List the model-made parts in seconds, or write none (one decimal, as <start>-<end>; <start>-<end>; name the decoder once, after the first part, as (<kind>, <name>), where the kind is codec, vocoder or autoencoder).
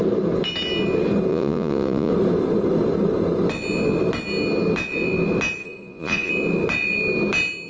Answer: 1.3-2.1 (vocoder, Vocos); 5.6-6.3